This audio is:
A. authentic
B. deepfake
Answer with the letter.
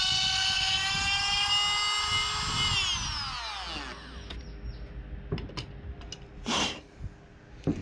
A